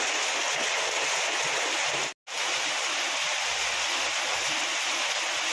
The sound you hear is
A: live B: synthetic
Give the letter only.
A